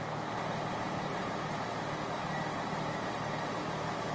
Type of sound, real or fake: real